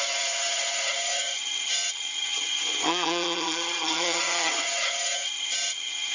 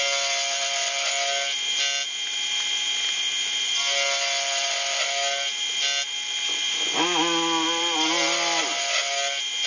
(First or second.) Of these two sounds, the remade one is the first